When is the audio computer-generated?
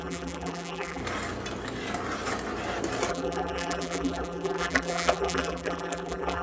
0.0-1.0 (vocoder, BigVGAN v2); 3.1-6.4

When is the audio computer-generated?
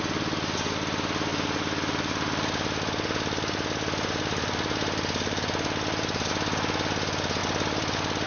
1.3-6.3 (vocoder, BigVGAN v2); 7.4-8.3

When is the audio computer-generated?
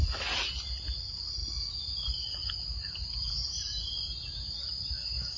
2.4-4.3 (vocoder, BigVGAN v2)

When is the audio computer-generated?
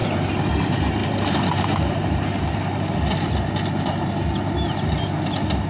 0.0-0.5 (vocoder, BigVGAN v2); 1.0-2.6